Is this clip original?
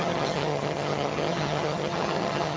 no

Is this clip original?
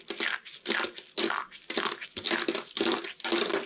yes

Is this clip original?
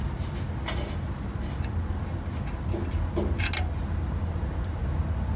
yes